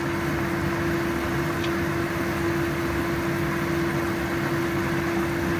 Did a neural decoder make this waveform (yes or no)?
no